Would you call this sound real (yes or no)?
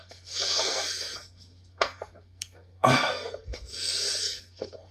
no